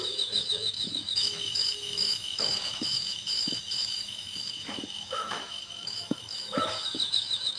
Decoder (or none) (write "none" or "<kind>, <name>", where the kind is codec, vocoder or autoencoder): autoencoder, DAC-VAE